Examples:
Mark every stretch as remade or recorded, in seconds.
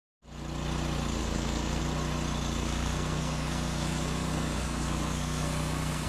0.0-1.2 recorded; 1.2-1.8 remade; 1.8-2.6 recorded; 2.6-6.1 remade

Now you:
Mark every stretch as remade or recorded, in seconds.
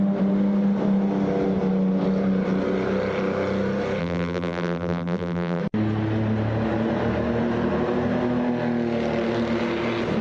0.0-4.0 recorded; 4.0-5.6 remade; 5.6-10.2 recorded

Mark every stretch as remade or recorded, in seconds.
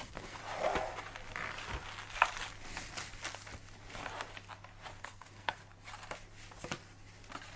0.0-0.4 remade; 0.4-5.0 recorded; 5.0-5.6 remade; 5.6-7.6 recorded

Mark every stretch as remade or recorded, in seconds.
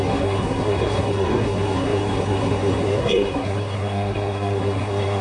0.0-5.2 remade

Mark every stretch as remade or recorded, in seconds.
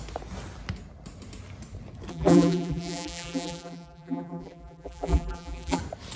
0.0-2.1 recorded; 2.1-5.8 remade; 5.8-6.2 recorded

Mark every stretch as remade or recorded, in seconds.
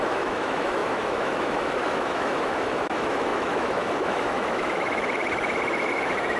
0.0-6.4 remade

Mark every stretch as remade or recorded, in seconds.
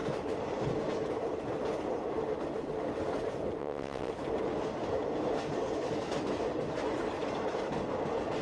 0.0-3.6 recorded; 3.6-4.1 remade; 4.1-8.4 recorded